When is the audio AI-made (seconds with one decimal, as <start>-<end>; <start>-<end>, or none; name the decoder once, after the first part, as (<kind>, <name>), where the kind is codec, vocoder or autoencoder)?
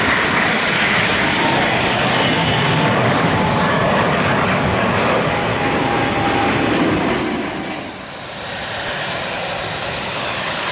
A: 0.0-5.5 (codec, DAC); 9.8-10.7